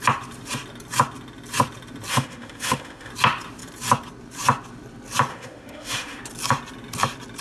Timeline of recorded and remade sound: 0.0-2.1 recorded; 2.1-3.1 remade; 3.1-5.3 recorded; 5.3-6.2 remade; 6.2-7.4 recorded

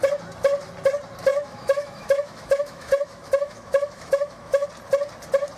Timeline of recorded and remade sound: 0.0-1.3 recorded; 1.3-4.7 remade; 4.7-5.6 recorded

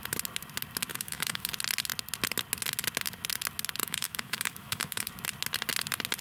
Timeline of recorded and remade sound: 0.0-0.9 recorded; 0.9-1.5 remade; 1.5-3.8 recorded; 3.8-5.1 remade; 5.1-6.2 recorded

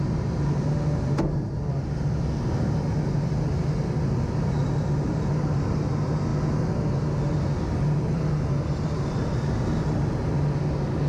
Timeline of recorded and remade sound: 0.0-11.1 recorded

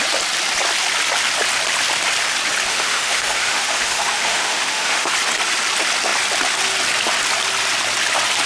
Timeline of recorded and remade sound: 0.0-2.7 recorded; 2.7-5.1 remade; 5.1-8.5 recorded

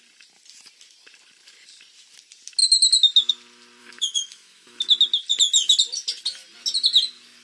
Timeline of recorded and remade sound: 0.0-3.8 recorded; 3.8-4.8 remade; 4.8-7.4 recorded

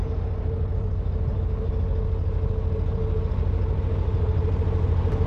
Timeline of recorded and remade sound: 0.0-5.3 recorded